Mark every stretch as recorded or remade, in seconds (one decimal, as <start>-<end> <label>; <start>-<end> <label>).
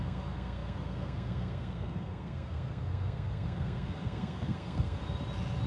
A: 0.0-5.0 remade; 5.0-5.7 recorded